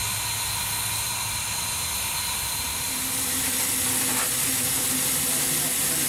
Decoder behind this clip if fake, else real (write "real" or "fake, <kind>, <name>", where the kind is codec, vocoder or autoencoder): real